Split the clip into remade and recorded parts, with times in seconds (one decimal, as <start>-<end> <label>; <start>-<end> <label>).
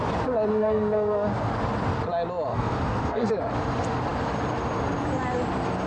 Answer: 0.0-0.5 recorded; 0.5-1.5 remade; 1.5-2.5 recorded; 2.5-3.3 remade; 3.3-5.9 recorded